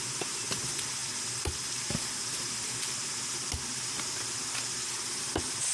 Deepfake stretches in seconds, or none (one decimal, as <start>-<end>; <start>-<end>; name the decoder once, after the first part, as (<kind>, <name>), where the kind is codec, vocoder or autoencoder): none